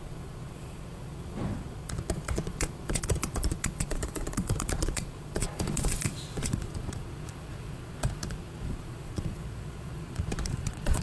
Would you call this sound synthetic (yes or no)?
yes